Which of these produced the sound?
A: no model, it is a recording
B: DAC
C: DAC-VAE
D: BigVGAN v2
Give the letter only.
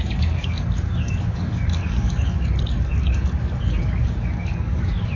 B